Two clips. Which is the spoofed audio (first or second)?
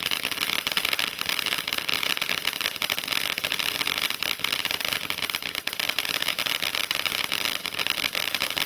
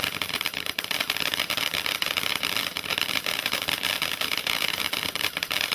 second